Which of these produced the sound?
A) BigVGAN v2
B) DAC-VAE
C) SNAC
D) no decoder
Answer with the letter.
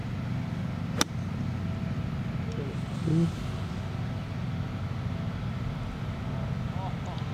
D